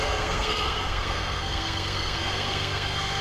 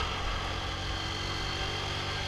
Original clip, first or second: second